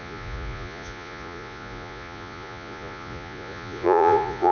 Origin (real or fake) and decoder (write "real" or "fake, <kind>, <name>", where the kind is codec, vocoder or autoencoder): fake, vocoder, Vocos